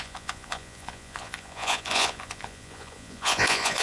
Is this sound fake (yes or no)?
yes